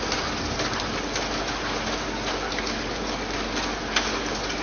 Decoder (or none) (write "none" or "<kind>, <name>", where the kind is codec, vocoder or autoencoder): none